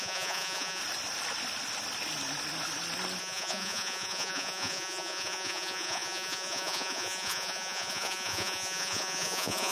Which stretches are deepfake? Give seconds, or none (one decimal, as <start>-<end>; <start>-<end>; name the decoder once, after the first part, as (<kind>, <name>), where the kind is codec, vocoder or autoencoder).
0.0-0.8 (vocoder, Vocos); 3.2-9.7